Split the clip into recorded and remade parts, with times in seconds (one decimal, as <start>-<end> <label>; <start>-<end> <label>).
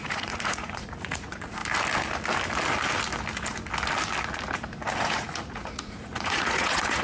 0.0-1.6 remade; 1.6-5.0 recorded; 5.0-7.0 remade